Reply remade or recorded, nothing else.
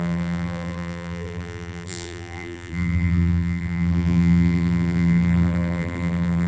remade